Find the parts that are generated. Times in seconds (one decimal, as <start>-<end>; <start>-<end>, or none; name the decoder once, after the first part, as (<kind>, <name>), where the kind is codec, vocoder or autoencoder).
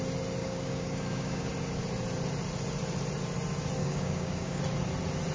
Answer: 0.4-1.5 (codec, DAC); 3.8-4.6